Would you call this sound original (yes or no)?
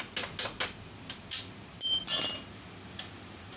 yes